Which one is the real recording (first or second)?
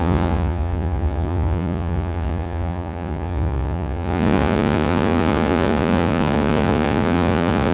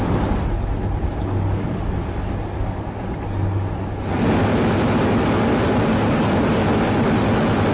second